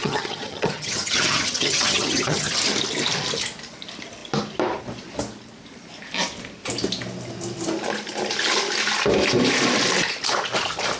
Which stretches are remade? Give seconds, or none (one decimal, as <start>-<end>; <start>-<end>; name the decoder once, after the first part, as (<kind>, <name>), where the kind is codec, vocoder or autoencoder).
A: 0.0-2.5 (vocoder, HiFi-GAN)